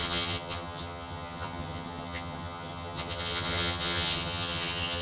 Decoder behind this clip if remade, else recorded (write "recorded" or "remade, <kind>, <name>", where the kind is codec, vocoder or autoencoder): remade, vocoder, HiFi-GAN